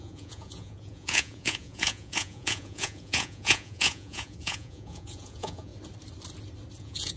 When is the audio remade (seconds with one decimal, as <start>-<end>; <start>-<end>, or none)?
0.0-5.7; 6.8-7.2